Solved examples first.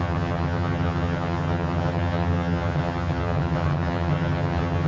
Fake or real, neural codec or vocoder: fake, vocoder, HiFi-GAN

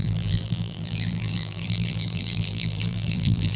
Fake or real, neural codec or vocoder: fake, vocoder, BigVGAN v2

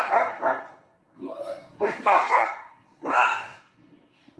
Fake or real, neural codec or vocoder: fake, codec, SNAC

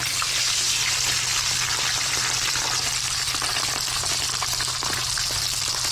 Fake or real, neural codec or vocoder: real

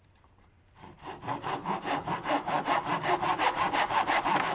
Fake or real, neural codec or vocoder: fake, vocoder, BigVGAN v2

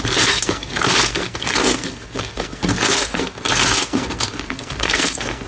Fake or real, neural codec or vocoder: fake, codec, SNAC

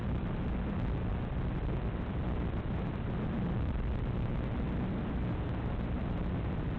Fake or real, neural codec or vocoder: real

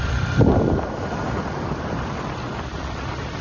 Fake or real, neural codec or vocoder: fake, vocoder, BigVGAN v2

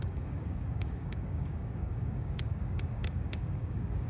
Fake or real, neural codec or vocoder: fake, codec, DAC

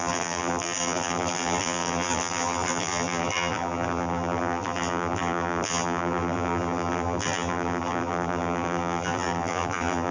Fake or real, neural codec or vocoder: fake, vocoder, BigVGAN v2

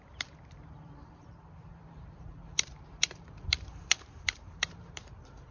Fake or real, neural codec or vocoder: fake, vocoder, BigVGAN v2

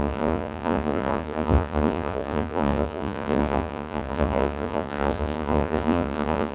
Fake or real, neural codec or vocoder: fake, vocoder, Vocos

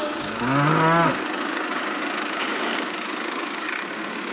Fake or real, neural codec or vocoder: fake, codec, DAC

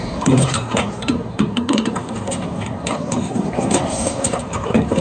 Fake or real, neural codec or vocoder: fake, codec, SNAC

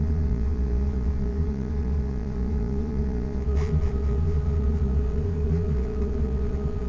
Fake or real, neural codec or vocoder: fake, vocoder, Vocos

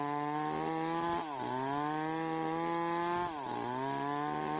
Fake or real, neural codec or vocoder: real